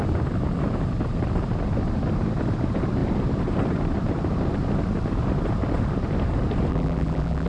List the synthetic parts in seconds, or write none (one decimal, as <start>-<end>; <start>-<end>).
6.7-7.5